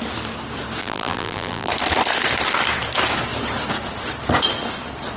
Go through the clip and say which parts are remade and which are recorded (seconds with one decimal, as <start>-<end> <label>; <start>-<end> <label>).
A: 0.0-0.8 recorded; 0.8-1.7 remade; 1.7-5.2 recorded